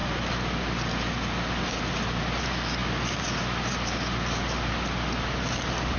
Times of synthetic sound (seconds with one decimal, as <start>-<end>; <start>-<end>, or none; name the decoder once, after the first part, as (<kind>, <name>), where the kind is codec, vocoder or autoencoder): none